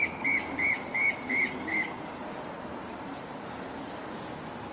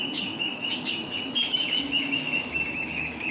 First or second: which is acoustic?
first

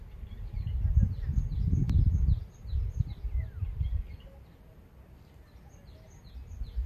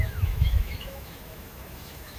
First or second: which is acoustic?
first